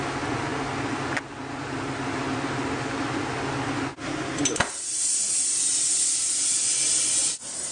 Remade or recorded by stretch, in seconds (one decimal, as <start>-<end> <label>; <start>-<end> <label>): 0.0-7.7 recorded